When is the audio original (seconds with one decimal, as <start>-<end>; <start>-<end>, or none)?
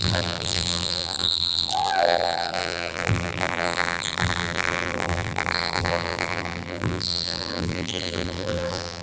none